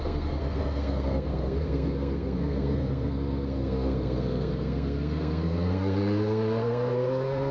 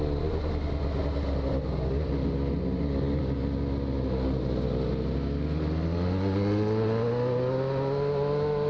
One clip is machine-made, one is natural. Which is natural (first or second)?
second